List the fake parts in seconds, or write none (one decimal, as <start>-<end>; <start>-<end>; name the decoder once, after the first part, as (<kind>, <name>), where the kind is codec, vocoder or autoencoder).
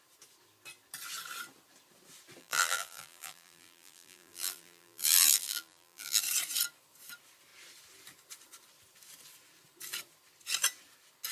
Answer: 2.4-6.2 (vocoder, BigVGAN v2)